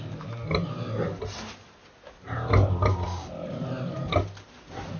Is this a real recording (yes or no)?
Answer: yes